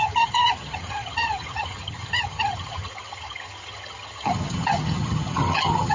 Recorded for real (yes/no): no